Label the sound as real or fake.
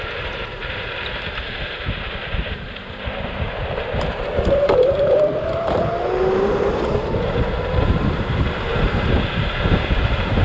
fake